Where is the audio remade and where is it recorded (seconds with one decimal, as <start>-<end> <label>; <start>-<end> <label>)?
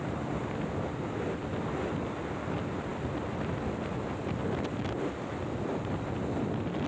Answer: 0.0-6.9 recorded